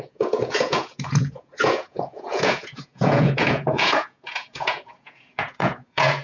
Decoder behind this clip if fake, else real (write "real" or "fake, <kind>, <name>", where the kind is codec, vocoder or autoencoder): fake, vocoder, Vocos